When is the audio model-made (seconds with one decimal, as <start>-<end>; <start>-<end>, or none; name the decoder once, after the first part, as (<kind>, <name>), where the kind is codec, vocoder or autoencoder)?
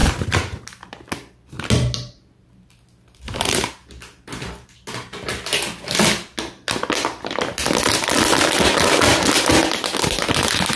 0.0-1.1 (vocoder, BigVGAN v2)